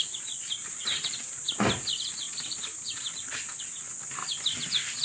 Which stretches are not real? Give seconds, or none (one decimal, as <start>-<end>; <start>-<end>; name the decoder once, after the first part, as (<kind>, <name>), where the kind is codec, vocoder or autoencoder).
0.8-1.3 (vocoder, WaveNeXt)